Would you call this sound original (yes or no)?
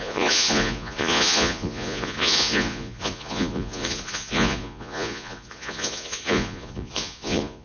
no